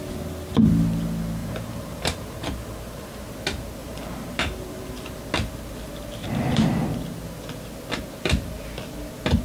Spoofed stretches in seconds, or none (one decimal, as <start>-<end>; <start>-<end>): 1.4-3.3; 3.8-5.3